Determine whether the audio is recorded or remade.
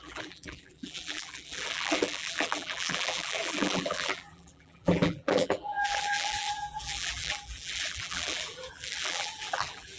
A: remade